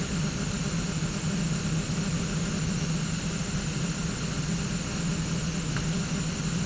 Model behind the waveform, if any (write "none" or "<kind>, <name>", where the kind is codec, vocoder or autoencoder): none